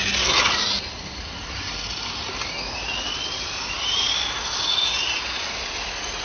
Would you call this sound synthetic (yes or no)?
no